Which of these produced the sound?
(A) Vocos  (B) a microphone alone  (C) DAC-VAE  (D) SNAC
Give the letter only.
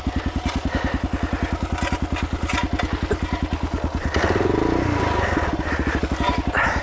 B